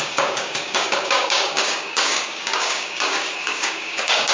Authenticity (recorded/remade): remade